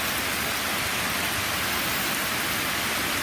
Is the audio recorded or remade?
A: recorded